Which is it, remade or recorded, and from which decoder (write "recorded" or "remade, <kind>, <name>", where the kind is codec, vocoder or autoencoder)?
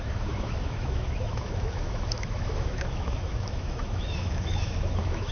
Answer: remade, autoencoder, DAC-VAE